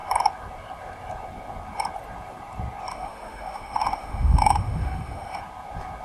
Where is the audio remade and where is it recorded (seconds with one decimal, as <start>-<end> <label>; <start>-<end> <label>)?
0.0-2.9 recorded; 2.9-5.4 remade; 5.4-6.0 recorded

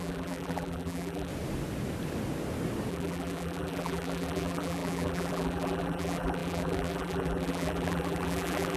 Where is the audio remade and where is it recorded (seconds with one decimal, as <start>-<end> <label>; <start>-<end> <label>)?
0.0-1.3 remade; 1.3-2.9 recorded; 2.9-8.8 remade